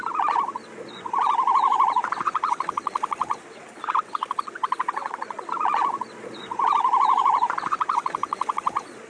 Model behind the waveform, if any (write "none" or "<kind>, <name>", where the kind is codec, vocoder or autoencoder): vocoder, Vocos